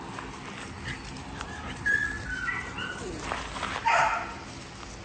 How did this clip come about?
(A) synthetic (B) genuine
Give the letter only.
B